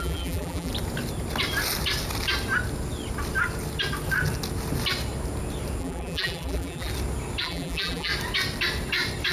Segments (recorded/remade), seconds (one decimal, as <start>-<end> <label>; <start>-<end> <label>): 0.0-0.7 remade; 0.7-5.8 recorded; 5.8-6.9 remade; 6.9-7.4 recorded; 7.4-8.1 remade; 8.1-9.3 recorded